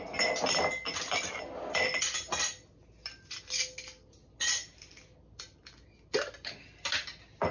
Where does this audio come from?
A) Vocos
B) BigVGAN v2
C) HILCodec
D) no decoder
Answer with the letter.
D